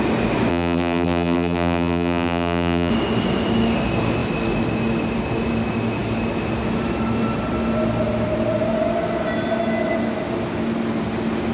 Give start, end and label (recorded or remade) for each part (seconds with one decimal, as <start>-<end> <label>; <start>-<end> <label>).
0.0-0.5 recorded; 0.5-2.9 remade; 2.9-11.5 recorded